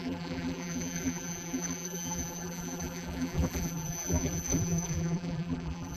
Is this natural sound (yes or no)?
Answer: no